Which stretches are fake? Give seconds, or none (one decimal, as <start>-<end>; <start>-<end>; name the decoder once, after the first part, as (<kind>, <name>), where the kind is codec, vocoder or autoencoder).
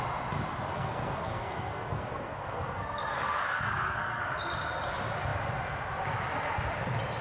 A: 0.7-4.2 (codec, SNAC)